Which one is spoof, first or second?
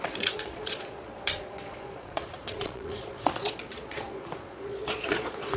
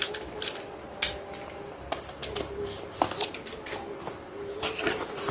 first